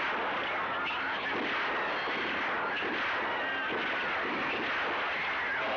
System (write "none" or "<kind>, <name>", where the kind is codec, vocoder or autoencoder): none